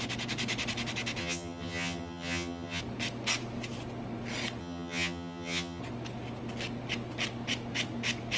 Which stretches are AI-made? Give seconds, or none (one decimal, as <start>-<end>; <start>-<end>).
1.2-2.8; 4.6-5.8